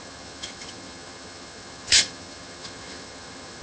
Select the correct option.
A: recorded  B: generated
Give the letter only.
B